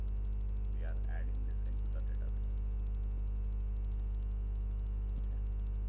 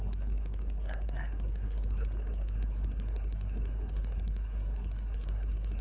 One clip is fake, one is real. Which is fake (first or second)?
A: second